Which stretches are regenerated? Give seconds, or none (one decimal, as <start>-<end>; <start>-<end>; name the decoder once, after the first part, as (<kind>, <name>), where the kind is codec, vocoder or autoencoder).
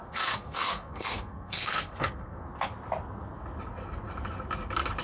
0.0-2.4 (codec, SNAC)